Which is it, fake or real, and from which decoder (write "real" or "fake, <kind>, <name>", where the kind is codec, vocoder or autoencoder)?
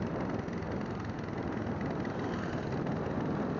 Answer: real